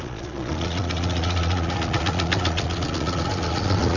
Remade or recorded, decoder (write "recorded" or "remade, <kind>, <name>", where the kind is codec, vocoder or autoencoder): remade, vocoder, Vocos